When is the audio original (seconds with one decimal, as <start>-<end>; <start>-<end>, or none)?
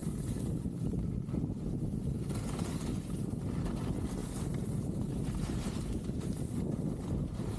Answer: 0.0-4.2; 6.0-7.6